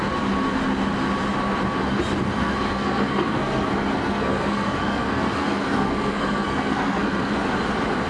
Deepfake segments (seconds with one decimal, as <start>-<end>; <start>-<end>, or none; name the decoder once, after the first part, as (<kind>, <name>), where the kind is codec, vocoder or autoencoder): 2.4-7.3 (codec, SNAC)